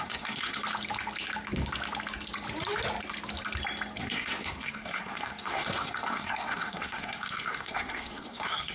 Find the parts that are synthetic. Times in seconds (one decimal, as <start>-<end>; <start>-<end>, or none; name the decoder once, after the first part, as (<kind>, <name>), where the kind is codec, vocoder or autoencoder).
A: 0.0-0.6 (codec, SNAC); 4.0-8.7